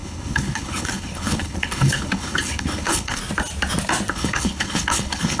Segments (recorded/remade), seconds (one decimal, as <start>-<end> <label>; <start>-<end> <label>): 0.0-3.2 remade; 3.2-4.1 recorded; 4.1-5.4 remade